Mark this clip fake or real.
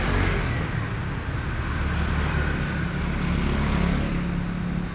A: real